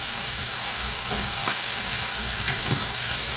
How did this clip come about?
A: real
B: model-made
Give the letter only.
B